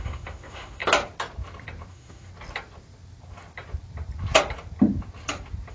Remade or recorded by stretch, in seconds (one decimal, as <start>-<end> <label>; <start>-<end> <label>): 0.0-0.8 remade; 0.8-1.9 recorded; 1.9-2.3 remade; 2.3-5.7 recorded